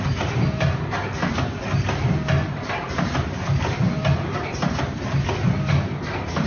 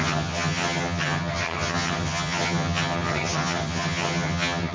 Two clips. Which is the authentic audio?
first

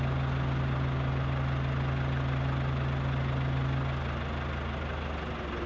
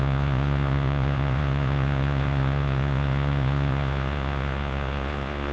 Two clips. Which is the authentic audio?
first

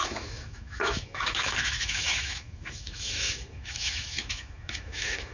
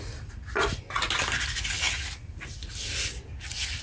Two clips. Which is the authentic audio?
second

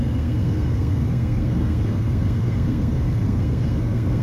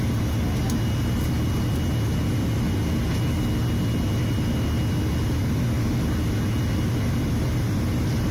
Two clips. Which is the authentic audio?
second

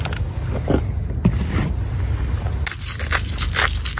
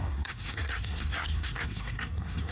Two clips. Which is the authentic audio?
first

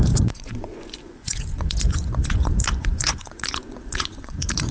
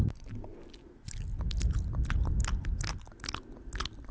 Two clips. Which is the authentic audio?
second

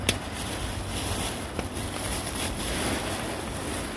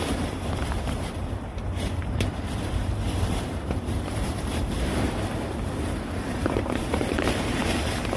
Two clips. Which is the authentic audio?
first